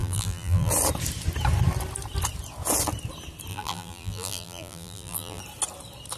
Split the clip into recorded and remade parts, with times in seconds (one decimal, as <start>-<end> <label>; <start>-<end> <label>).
0.0-0.7 remade; 0.7-3.5 recorded; 3.5-5.4 remade; 5.4-6.2 recorded